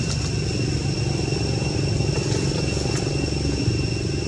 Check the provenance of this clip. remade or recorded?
recorded